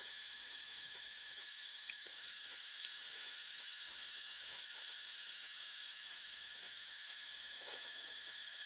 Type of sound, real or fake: fake